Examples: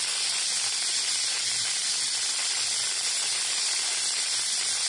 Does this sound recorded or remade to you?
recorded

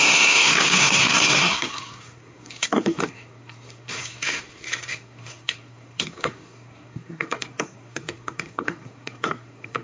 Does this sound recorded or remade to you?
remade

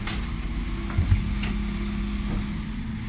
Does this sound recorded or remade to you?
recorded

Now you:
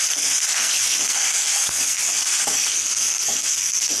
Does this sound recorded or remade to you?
remade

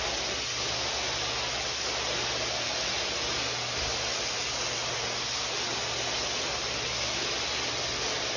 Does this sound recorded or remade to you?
recorded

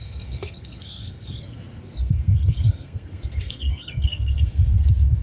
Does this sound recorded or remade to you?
remade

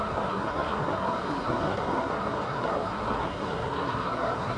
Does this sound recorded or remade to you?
remade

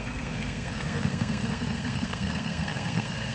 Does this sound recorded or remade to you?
remade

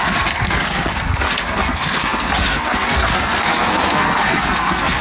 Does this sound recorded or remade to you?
remade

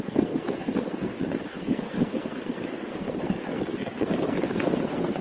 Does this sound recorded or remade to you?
remade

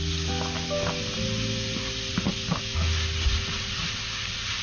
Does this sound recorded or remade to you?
recorded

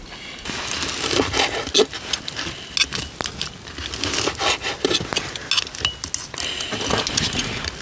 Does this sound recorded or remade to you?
recorded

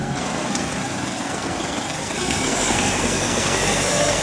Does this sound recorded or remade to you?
remade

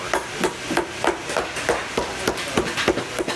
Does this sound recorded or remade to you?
recorded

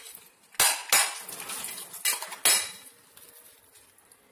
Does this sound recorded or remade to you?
recorded